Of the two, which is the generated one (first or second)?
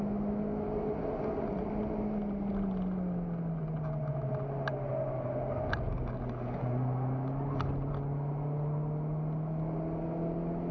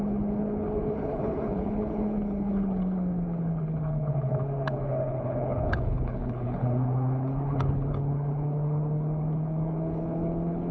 second